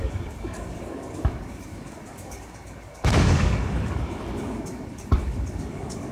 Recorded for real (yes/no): no